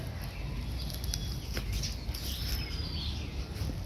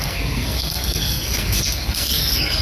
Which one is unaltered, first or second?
first